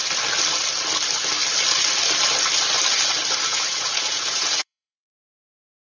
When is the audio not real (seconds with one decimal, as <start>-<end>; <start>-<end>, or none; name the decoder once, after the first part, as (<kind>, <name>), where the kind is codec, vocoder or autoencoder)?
3.5-5.3 (vocoder, Vocos)